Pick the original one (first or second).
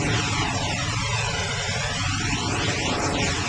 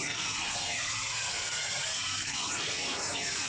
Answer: first